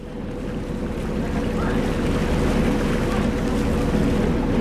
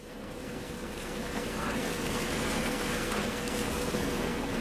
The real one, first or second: first